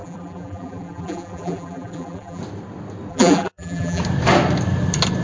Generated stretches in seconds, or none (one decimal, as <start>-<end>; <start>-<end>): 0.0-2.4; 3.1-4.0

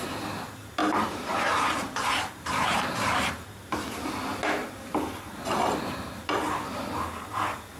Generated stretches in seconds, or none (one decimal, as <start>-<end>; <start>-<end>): 0.8-3.3; 4.6-5.2

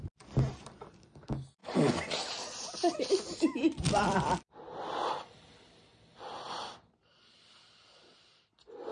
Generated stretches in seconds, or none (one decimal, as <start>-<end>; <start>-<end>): 1.6-6.9